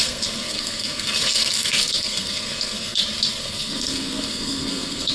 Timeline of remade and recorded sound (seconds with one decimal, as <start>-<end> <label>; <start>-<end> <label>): 0.0-3.0 remade; 3.0-3.4 recorded; 3.4-5.1 remade